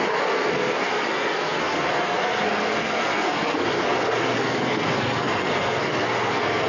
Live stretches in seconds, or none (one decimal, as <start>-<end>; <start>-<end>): none